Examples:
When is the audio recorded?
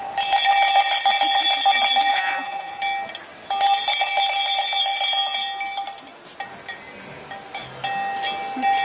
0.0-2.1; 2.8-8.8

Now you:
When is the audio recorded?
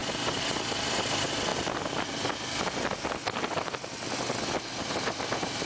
1.5-4.9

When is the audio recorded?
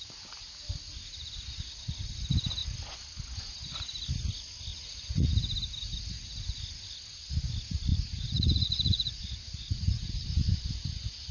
0.0-4.7; 5.3-7.9; 10.1-11.3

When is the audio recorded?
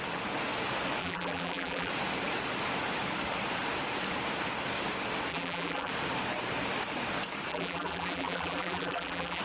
0.0-1.0; 1.9-5.3; 5.9-7.5